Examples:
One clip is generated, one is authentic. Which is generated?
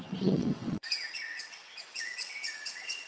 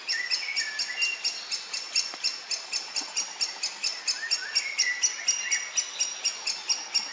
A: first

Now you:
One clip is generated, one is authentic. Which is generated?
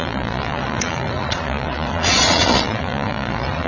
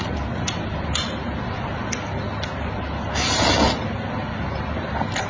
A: first